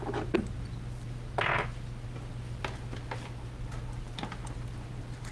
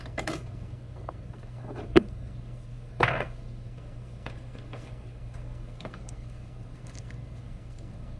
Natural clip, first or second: first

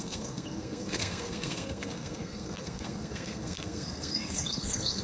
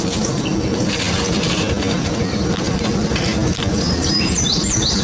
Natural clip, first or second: second